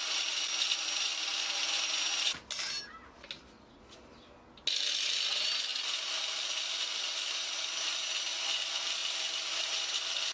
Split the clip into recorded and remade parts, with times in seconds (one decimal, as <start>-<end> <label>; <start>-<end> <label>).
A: 0.0-10.3 recorded